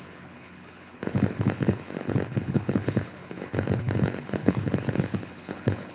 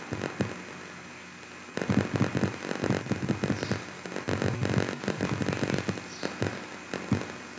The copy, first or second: first